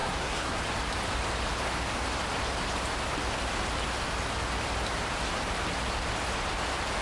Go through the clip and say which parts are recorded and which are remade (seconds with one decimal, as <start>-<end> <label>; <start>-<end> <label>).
0.0-0.6 remade; 0.6-7.0 recorded